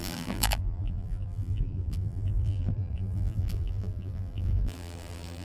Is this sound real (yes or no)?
no